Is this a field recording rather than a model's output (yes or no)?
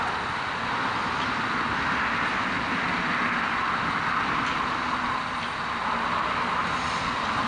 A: yes